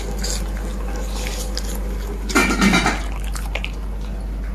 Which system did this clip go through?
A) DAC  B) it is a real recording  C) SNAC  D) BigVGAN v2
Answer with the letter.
B